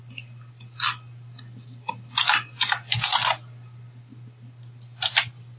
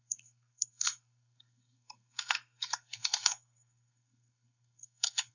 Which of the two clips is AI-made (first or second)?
second